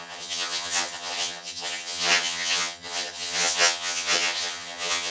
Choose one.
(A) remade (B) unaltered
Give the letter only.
A